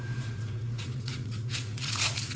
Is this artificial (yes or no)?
yes